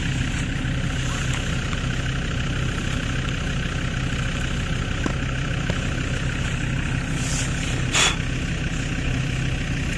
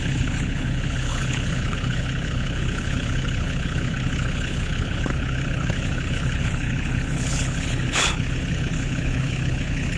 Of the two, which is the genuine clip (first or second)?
first